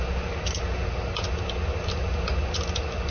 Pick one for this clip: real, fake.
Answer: real